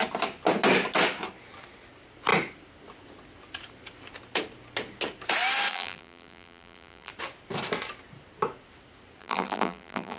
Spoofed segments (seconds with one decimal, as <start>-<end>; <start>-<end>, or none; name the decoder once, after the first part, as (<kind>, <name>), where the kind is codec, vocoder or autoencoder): 5.7-7.1 (vocoder, BigVGAN v2); 9.2-10.2